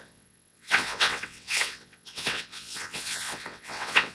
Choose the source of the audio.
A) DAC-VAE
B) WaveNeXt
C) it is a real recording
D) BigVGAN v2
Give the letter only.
B